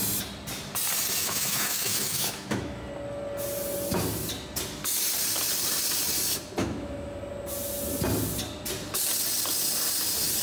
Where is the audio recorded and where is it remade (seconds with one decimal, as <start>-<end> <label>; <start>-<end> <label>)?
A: 0.0-1.2 recorded; 1.2-2.9 remade; 2.9-6.6 recorded; 6.6-7.2 remade; 7.2-10.4 recorded